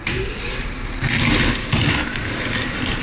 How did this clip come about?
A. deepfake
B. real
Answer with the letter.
B